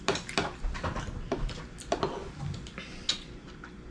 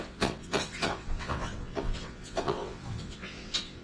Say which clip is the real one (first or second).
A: first